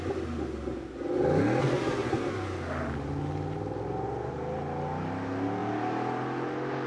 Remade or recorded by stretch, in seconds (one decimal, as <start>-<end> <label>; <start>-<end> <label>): 0.0-6.9 recorded